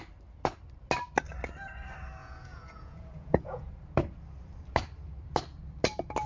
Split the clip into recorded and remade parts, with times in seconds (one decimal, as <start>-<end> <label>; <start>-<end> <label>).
0.0-2.2 recorded; 2.2-3.7 remade; 3.7-6.3 recorded